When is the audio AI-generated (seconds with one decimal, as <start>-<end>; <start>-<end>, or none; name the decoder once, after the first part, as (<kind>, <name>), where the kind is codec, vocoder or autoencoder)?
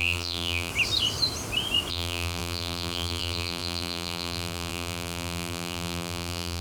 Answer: 0.0-0.7 (vocoder, BigVGAN v2); 1.9-6.6